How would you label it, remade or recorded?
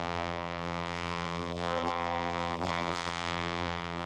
remade